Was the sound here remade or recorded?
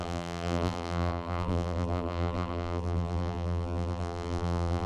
remade